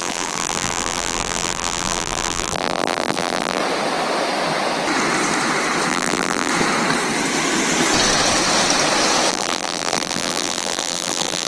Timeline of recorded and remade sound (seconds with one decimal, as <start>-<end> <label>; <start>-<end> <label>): 0.0-3.6 remade; 3.6-5.9 recorded; 5.9-6.5 remade; 6.5-9.3 recorded; 9.3-11.5 remade